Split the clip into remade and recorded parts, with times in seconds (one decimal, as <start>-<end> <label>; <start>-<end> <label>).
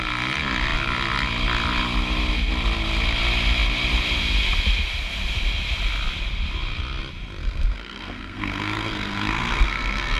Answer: 0.0-7.4 recorded; 7.4-10.2 remade